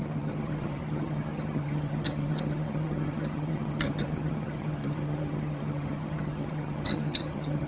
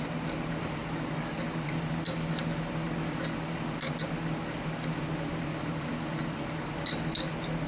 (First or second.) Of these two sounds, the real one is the second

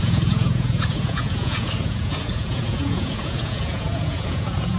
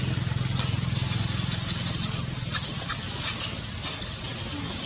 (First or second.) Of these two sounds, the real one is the second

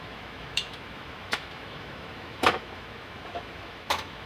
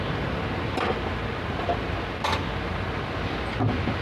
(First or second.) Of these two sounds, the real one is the second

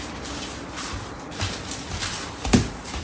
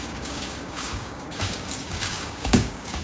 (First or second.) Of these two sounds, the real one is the first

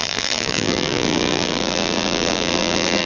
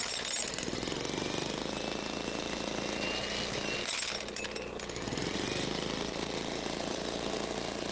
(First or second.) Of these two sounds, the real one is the second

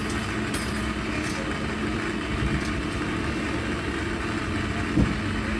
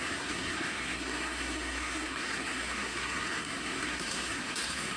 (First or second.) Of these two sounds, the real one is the first